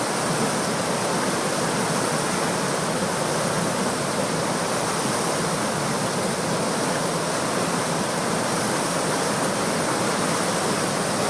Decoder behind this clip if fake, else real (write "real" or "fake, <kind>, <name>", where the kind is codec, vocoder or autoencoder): real